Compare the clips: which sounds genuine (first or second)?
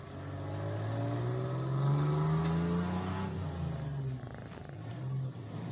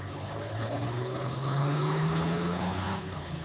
first